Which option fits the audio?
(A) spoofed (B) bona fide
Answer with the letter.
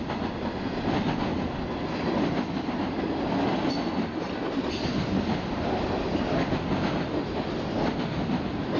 B